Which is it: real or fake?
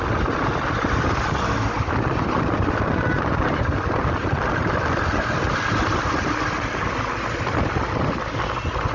real